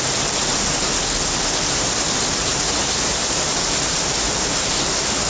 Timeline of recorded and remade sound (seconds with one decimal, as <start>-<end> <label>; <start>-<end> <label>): 0.0-2.5 recorded; 2.5-3.4 remade; 3.4-5.3 recorded